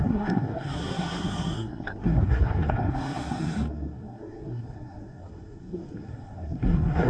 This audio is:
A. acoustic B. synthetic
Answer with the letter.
B